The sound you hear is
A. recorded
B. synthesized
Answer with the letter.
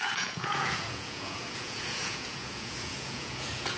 B